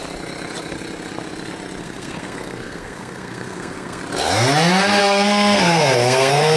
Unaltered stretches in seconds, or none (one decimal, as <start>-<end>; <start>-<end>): 0.0-1.8; 4.0-5.0